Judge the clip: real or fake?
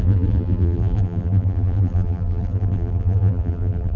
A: fake